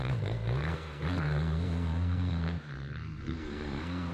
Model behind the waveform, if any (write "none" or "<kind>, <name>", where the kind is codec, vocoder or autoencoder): codec, SNAC